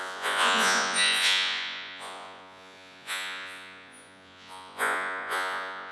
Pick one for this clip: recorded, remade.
remade